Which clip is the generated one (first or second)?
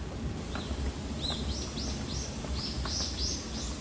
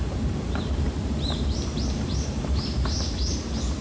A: second